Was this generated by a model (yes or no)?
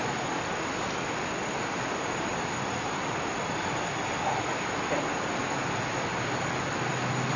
no